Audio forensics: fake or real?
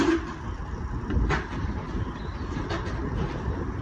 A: real